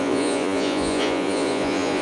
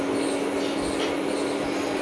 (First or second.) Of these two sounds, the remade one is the first